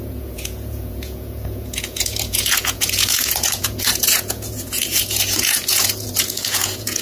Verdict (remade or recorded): remade